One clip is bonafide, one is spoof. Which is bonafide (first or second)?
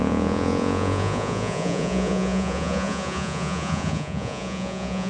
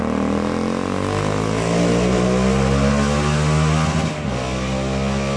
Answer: second